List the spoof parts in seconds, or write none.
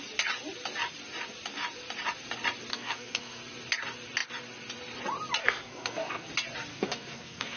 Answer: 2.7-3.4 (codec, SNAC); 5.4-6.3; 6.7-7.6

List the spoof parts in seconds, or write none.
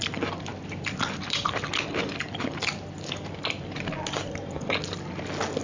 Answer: none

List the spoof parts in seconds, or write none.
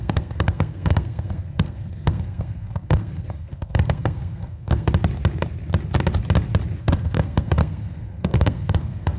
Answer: 0.0-4.9 (codec, SNAC); 6.8-9.2